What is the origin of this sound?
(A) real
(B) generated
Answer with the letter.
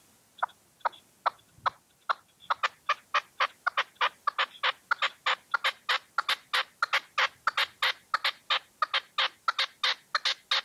A